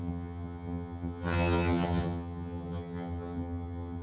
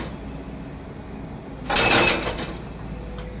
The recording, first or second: second